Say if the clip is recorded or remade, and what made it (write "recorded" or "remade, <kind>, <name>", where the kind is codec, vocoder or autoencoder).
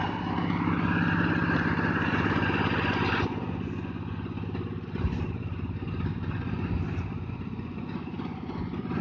recorded